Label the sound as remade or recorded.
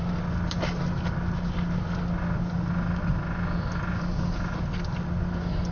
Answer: recorded